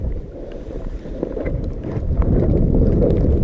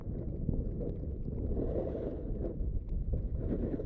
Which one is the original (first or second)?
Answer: second